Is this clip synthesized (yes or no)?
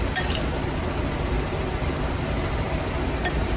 no